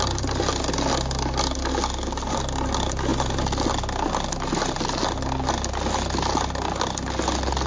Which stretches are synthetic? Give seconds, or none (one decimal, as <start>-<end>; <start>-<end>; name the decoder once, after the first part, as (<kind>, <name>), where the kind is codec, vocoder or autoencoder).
none